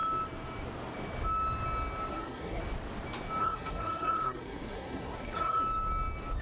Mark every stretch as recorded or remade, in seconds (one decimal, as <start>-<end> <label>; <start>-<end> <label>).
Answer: 0.0-2.1 recorded; 2.1-2.6 remade; 2.6-3.4 recorded; 3.4-5.6 remade; 5.6-6.4 recorded